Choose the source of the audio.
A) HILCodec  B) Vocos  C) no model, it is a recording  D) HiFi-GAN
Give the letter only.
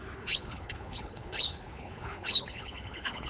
A